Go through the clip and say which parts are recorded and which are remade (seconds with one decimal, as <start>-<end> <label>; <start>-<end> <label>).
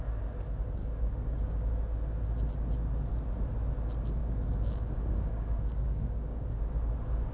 0.0-0.8 recorded; 0.8-1.7 remade; 1.7-4.2 recorded; 4.2-6.6 remade; 6.6-7.3 recorded